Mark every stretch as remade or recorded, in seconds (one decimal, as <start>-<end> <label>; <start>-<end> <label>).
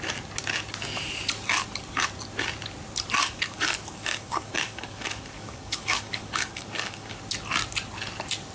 0.0-3.2 recorded; 3.2-7.2 remade; 7.2-8.5 recorded